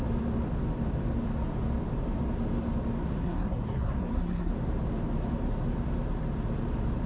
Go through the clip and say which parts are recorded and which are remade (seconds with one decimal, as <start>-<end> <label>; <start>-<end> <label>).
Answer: 0.0-3.2 recorded; 3.2-4.5 remade; 4.5-7.1 recorded